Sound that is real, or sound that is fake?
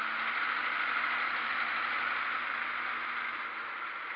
real